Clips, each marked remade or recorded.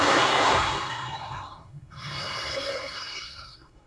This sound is remade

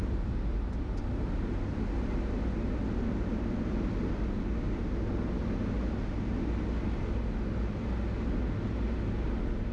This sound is recorded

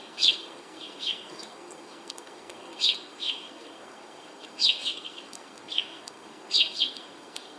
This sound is remade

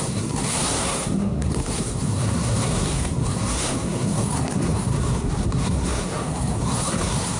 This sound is remade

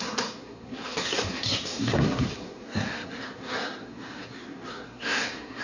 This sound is remade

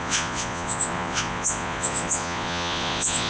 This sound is remade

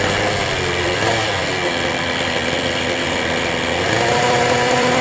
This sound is remade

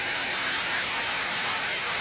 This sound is recorded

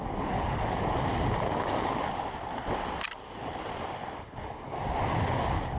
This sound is recorded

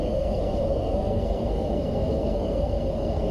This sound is remade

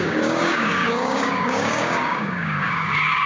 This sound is remade